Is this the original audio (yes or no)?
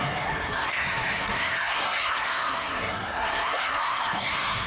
no